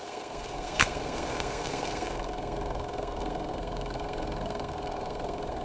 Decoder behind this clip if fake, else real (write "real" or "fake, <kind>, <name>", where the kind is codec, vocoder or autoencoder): fake, codec, SNAC